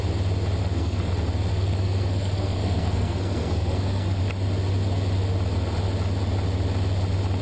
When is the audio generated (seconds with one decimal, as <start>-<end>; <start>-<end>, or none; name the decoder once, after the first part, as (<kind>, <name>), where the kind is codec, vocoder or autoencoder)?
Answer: 0.6-1.1 (codec, SNAC); 1.5-4.2